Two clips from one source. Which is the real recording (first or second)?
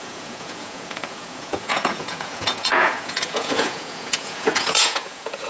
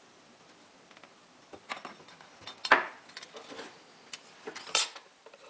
second